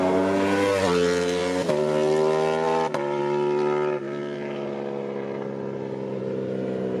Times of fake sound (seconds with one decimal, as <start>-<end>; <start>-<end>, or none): none